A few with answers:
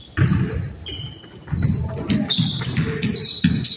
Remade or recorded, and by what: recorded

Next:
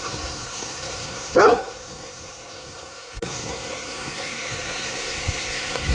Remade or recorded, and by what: remade, codec, SNAC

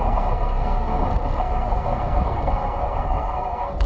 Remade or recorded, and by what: remade, codec, SNAC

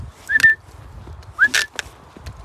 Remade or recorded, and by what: recorded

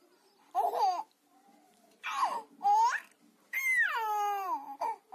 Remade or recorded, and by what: recorded